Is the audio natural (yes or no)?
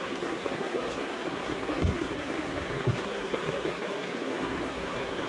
no